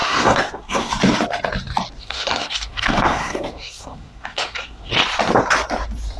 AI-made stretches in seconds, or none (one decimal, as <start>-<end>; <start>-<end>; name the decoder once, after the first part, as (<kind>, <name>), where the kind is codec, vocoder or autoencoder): 0.0-0.9 (codec, SNAC); 2.0-4.9